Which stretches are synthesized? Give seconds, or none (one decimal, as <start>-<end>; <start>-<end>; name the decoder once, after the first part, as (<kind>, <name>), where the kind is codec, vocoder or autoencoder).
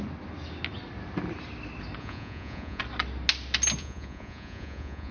2.0-2.8 (vocoder, Vocos); 3.8-5.1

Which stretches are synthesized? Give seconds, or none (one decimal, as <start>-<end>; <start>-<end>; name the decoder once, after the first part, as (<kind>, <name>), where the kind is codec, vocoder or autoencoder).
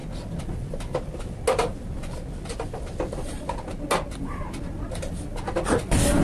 none